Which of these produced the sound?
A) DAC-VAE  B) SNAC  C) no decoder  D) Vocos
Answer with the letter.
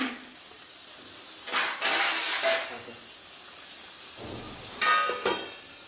C